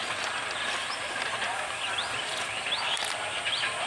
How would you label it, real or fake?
real